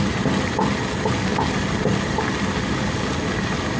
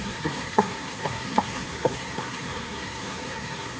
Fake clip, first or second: second